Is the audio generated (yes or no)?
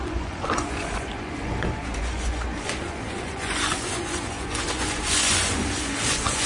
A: yes